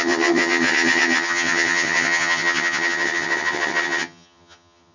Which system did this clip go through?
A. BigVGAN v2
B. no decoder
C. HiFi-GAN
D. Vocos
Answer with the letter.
C